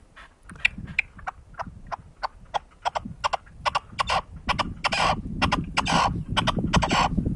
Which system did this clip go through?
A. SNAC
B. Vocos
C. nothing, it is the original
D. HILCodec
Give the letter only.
C